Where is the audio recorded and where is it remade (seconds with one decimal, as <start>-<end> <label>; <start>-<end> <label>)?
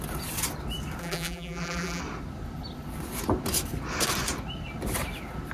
0.0-1.0 recorded; 1.0-2.0 remade; 2.0-5.5 recorded